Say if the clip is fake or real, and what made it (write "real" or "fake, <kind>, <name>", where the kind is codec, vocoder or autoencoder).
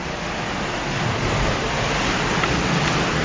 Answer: real